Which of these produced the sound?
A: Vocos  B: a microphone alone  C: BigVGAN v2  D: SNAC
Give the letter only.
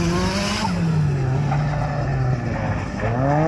B